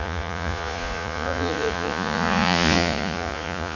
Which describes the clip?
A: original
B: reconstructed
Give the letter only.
B